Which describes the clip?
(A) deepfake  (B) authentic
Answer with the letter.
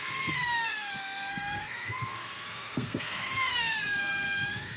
A